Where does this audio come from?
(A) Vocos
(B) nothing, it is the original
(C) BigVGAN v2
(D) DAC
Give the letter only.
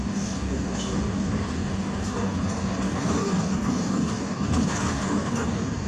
D